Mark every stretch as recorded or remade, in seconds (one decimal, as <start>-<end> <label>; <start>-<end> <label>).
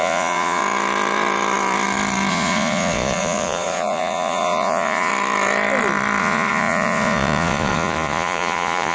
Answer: 0.0-0.6 remade; 0.6-2.3 recorded; 2.3-5.1 remade; 5.1-6.2 recorded; 6.2-8.9 remade